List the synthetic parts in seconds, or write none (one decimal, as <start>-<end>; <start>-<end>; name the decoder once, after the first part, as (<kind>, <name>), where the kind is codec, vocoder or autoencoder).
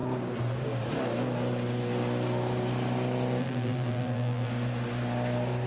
3.4-4.5 (vocoder, BigVGAN v2)